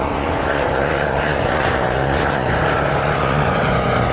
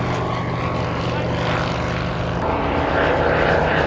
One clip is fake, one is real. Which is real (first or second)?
second